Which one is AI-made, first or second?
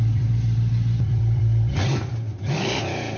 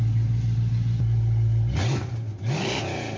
first